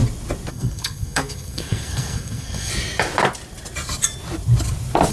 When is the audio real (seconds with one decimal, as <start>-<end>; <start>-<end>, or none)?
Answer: 0.0-0.5; 2.7-5.1